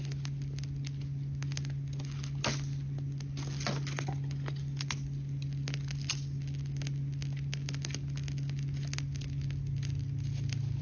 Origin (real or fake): real